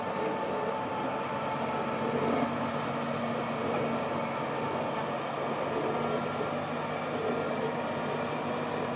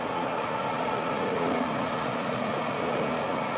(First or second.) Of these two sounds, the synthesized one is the second